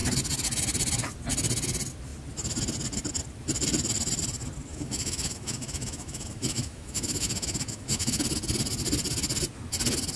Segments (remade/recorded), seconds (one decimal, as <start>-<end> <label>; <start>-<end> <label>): 0.0-4.7 recorded; 4.7-8.2 remade; 8.2-10.2 recorded